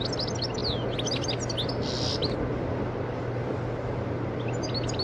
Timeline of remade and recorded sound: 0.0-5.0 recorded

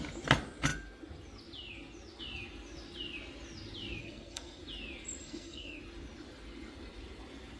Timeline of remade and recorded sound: 0.0-4.0 recorded; 4.0-4.6 remade; 4.6-5.2 recorded; 5.2-5.8 remade; 5.8-7.6 recorded